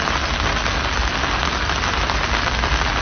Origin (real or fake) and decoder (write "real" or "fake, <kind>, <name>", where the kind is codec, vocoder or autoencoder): real